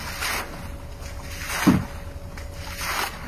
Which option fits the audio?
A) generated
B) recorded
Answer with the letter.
B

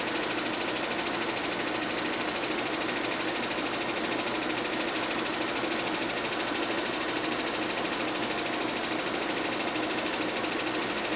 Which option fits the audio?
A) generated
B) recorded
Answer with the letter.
B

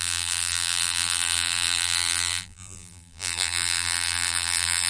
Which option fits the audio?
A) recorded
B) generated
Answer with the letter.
B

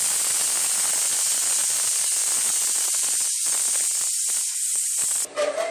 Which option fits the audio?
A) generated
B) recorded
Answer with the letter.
A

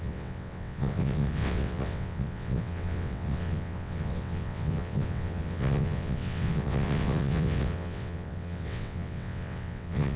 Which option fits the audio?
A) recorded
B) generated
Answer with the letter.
B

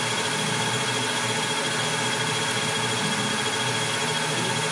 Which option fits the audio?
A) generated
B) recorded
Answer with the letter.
B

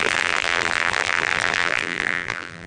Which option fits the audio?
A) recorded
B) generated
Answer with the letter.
B